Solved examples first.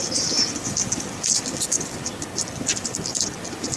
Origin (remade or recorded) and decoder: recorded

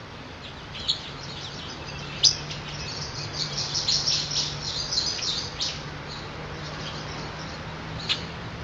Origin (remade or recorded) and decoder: recorded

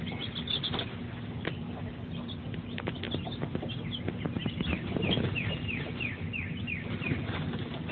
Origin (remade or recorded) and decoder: recorded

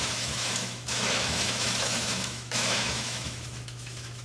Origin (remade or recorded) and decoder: remade, autoencoder, DAC-VAE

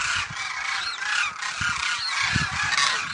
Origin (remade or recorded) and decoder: recorded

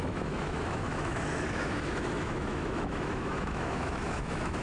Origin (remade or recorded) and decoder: remade, autoencoder, DAC-VAE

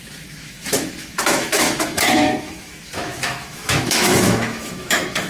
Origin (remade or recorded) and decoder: remade, autoencoder, DAC-VAE